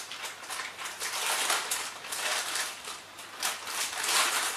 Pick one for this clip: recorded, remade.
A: remade